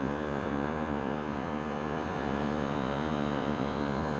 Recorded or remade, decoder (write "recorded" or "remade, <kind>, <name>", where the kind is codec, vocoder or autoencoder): remade, vocoder, Vocos